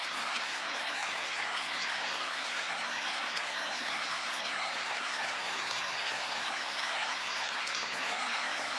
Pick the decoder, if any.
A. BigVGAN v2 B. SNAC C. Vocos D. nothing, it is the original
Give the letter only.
B